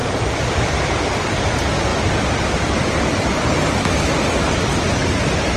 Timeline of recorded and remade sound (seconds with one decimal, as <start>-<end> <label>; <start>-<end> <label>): 0.0-1.5 remade; 1.5-1.9 recorded; 1.9-3.7 remade; 3.7-5.6 recorded